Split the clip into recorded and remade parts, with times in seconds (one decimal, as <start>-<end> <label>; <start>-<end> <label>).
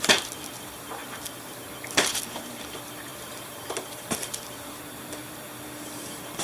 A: 0.0-1.0 remade; 1.0-2.1 recorded; 2.1-6.4 remade